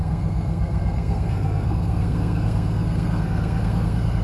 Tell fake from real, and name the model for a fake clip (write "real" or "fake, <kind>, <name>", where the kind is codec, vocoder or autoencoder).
fake, codec, SNAC